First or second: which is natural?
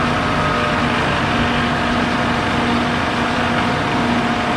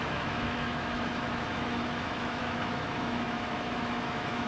first